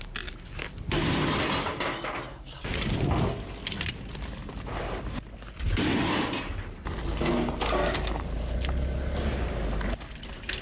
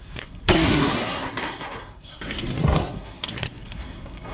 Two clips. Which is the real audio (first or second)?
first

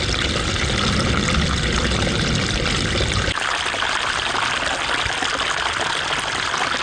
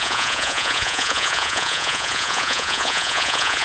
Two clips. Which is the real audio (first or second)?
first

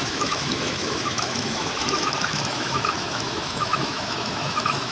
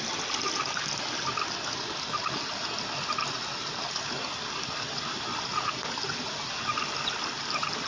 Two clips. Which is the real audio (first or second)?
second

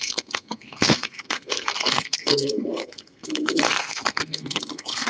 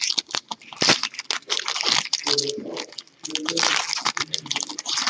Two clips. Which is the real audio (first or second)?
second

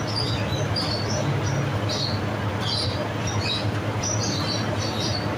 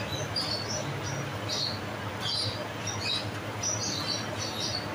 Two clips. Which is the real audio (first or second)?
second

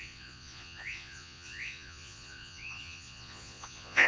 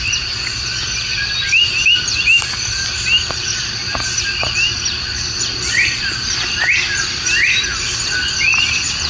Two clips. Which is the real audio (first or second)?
second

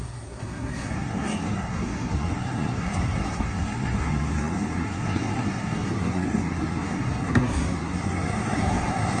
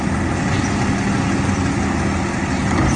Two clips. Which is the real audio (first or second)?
second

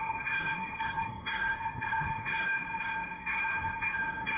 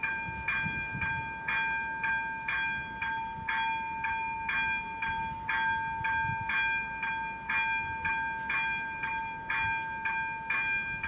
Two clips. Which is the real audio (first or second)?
second